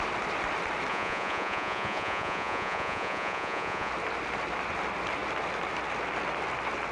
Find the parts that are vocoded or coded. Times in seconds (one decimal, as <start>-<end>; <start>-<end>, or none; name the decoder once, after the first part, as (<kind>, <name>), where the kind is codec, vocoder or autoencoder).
0.9-3.9 (vocoder, Vocos)